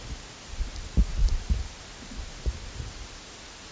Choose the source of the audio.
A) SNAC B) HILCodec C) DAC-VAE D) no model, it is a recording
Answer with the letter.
D